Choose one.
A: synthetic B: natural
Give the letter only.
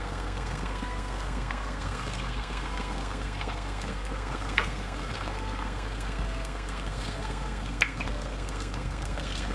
A